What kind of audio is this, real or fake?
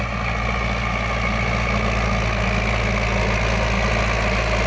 real